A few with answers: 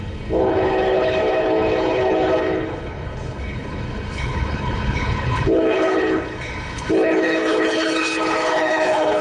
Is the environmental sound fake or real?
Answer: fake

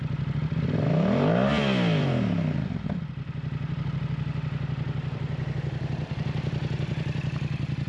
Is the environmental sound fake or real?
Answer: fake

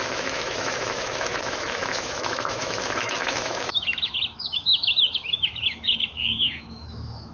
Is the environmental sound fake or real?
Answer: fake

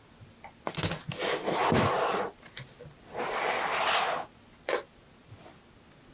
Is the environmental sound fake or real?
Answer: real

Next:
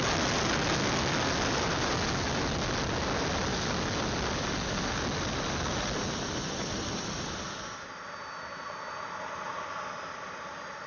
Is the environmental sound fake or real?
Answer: real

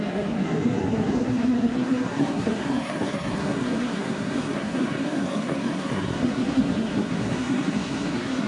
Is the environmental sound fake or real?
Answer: fake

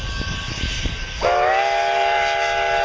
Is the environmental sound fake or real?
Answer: real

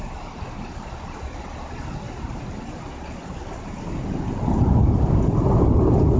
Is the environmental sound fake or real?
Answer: real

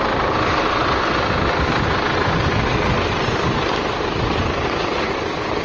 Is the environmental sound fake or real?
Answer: real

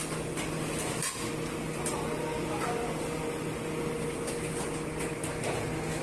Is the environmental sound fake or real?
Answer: real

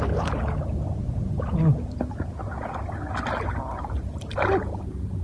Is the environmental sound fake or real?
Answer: real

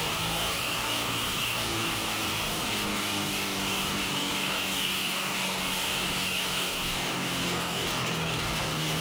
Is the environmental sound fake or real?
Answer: fake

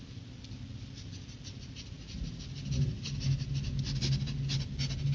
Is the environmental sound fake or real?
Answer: real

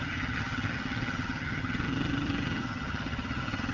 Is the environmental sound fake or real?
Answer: fake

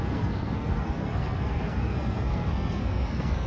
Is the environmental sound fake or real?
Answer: fake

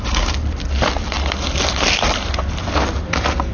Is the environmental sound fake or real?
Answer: real